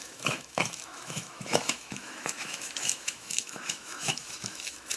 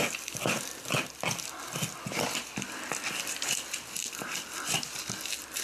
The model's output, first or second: first